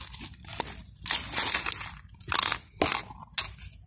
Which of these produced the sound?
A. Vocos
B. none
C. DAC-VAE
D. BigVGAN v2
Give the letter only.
B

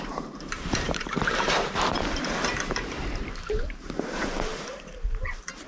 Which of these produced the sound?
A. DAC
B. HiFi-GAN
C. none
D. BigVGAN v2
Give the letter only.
D